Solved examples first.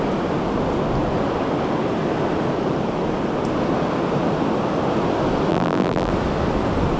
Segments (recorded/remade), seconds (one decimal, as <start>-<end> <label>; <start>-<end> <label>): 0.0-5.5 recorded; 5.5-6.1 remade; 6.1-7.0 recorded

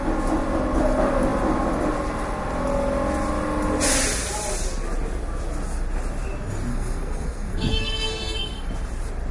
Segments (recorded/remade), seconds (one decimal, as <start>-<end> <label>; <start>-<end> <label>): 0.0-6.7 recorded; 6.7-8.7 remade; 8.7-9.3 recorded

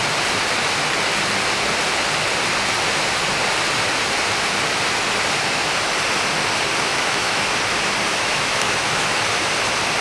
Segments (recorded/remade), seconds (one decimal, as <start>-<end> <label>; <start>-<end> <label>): 0.0-6.9 recorded; 6.9-7.4 remade; 7.4-8.1 recorded; 8.1-9.2 remade; 9.2-10.0 recorded

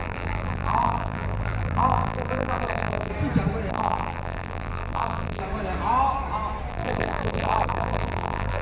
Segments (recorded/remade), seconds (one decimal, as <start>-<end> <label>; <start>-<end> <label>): 0.0-3.1 remade; 3.1-3.7 recorded; 3.7-5.4 remade; 5.4-6.7 recorded; 6.7-8.6 remade